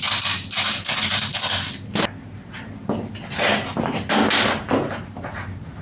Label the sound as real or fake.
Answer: real